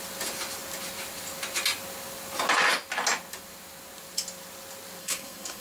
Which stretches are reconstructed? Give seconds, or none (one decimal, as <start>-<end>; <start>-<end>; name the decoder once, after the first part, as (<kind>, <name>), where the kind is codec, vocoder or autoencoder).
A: 5.0-5.6 (codec, SNAC)